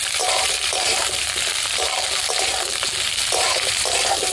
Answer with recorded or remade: remade